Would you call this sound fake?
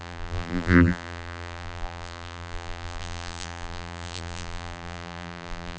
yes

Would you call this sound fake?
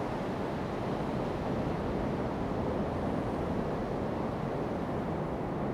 no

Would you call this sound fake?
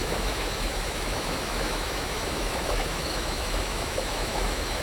yes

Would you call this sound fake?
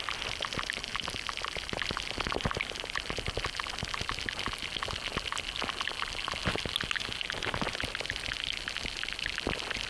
no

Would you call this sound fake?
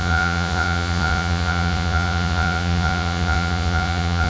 yes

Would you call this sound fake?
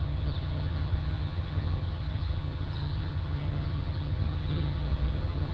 yes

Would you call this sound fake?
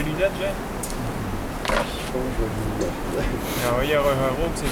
no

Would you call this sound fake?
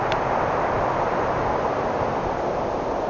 no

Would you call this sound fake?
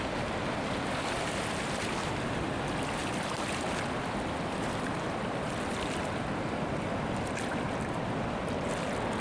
no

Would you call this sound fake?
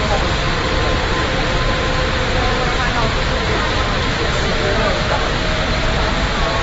no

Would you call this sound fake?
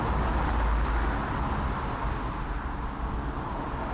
no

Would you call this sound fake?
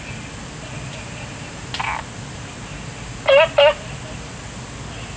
no